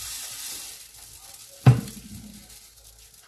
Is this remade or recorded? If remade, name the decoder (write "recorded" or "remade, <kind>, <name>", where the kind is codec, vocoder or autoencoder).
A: recorded